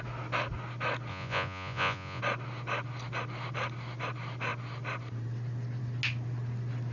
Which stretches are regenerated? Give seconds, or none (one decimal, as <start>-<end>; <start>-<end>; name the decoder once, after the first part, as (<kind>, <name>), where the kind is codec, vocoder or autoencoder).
1.1-2.2 (vocoder, Vocos)

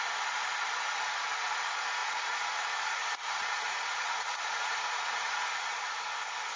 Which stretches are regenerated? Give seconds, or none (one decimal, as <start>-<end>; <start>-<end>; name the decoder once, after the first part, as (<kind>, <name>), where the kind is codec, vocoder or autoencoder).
2.0-6.0 (vocoder, Vocos)

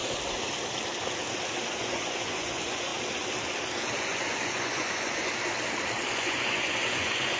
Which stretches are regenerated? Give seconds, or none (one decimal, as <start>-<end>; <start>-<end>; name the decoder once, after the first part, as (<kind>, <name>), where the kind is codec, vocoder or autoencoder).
1.8-2.9 (vocoder, Vocos); 4.0-5.3; 6.1-7.4

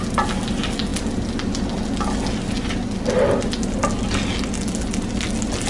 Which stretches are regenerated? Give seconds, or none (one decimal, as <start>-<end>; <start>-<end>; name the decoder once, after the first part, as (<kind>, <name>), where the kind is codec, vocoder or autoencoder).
none

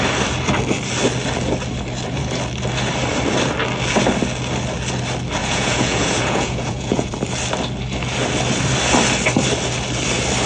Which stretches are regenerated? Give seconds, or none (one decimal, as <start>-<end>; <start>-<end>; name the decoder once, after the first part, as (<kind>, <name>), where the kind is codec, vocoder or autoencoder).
5.4-7.1 (vocoder, Vocos)